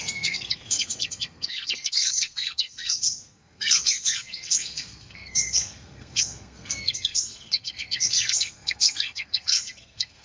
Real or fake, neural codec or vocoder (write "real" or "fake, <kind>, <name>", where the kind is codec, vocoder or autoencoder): fake, codec, SNAC